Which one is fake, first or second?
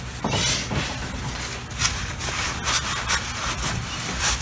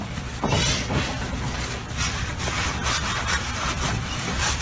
second